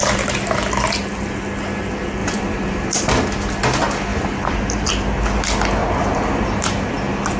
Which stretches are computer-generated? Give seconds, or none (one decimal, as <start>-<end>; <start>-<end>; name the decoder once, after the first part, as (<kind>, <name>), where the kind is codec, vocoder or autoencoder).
2.2-3.1 (vocoder, BigVGAN v2); 4.1-4.9; 5.8-6.9